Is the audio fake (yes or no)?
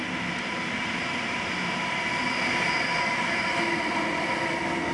no